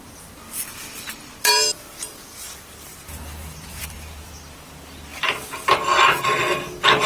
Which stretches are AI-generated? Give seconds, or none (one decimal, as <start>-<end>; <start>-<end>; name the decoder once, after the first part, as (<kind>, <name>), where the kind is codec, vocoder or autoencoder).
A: 0.0-7.1 (vocoder, BigVGAN v2)